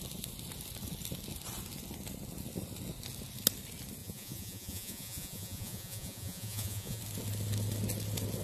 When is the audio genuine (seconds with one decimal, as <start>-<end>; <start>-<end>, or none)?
0.0-4.0; 7.0-8.4